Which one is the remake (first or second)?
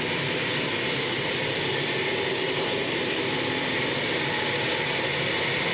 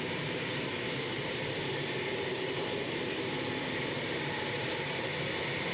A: second